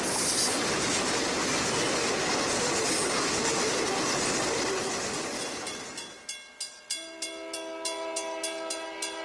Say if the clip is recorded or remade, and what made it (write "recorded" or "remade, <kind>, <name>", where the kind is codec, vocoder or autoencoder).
recorded